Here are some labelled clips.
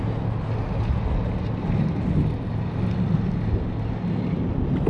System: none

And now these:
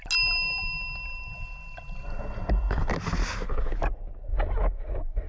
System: none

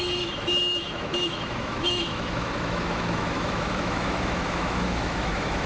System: autoencoder, DAC-VAE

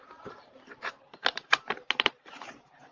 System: vocoder, BigVGAN v2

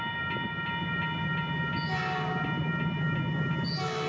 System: none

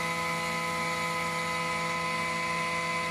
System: none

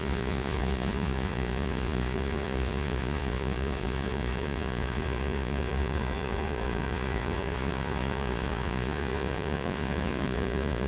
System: vocoder, Vocos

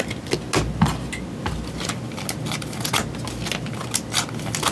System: none